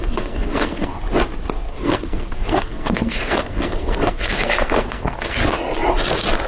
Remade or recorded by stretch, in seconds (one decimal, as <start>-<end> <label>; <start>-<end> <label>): 0.0-1.0 remade; 1.0-1.7 recorded; 1.7-5.4 remade; 5.4-6.5 recorded